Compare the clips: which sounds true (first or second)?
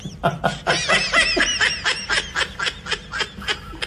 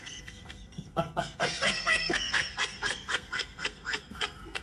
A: first